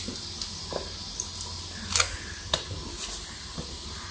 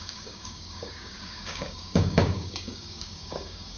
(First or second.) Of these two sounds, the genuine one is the first